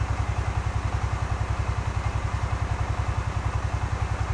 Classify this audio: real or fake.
real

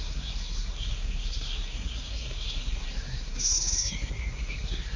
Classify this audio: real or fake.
fake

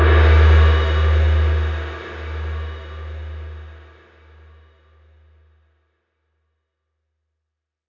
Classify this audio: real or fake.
real